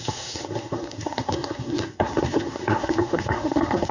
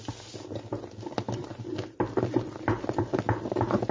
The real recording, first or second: second